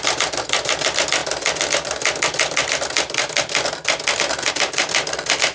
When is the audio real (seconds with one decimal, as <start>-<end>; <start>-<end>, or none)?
0.0-5.5